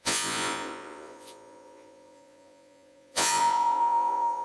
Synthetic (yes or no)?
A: yes